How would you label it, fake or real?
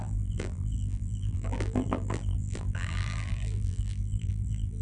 fake